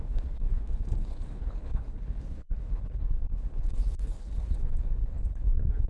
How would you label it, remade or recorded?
remade